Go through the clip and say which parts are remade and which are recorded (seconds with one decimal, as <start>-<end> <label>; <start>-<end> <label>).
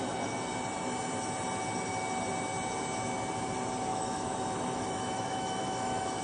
0.0-3.9 recorded; 3.9-6.2 remade